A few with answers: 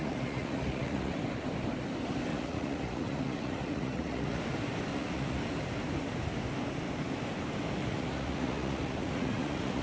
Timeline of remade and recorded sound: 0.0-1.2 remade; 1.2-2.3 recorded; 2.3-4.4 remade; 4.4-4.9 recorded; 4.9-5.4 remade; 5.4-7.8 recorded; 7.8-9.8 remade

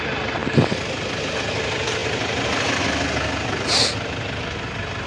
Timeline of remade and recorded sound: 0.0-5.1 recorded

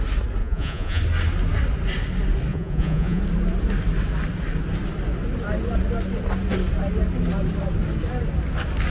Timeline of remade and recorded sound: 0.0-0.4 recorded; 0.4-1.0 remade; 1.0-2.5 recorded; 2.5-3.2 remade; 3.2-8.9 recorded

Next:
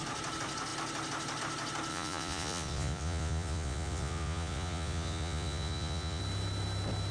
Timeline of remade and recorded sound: 0.0-1.9 recorded; 1.9-6.2 remade; 6.2-7.1 recorded